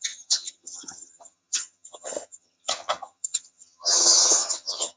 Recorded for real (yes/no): no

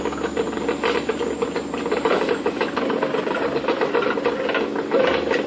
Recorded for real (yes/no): yes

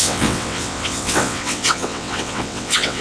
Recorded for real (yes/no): no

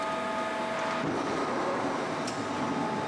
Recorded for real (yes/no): yes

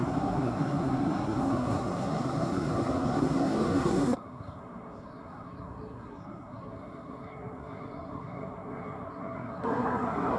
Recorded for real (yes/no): no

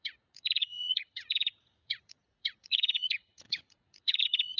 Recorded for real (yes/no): no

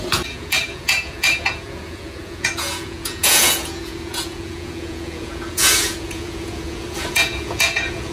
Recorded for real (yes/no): no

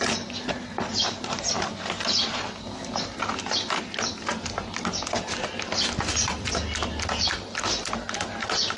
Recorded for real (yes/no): yes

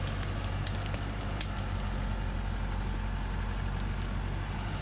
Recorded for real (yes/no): yes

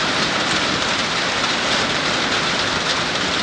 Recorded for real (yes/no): no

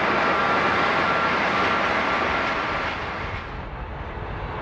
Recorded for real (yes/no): yes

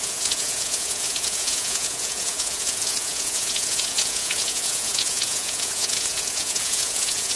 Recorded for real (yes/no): no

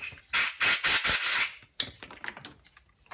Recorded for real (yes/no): yes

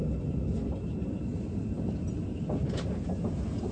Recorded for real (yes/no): yes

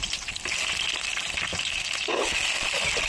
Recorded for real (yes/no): yes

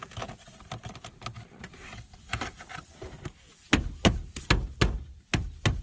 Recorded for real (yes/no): yes